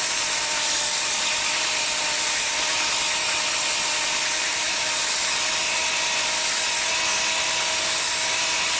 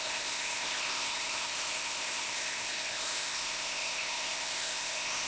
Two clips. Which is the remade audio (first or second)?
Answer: second